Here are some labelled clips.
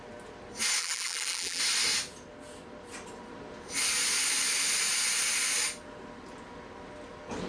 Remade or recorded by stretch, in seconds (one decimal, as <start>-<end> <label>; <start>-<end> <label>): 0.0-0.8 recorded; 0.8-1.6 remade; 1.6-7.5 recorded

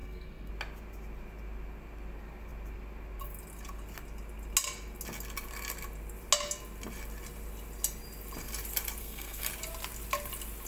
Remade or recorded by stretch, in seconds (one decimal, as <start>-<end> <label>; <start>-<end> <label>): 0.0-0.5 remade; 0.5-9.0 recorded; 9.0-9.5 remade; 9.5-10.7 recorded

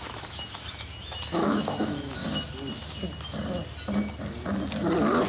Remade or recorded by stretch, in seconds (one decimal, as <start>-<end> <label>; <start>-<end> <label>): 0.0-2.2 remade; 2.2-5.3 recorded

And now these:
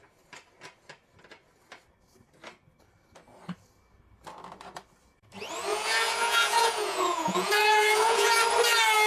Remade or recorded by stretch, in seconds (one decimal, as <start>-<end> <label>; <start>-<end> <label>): 0.0-5.7 recorded; 5.7-8.3 remade; 8.3-9.1 recorded

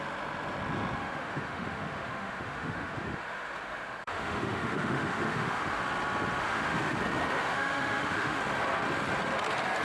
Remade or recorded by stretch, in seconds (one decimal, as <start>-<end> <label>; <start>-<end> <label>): 0.0-1.0 recorded; 1.0-5.8 remade; 5.8-6.4 recorded; 6.4-7.0 remade; 7.0-7.5 recorded; 7.5-8.4 remade; 8.4-9.8 recorded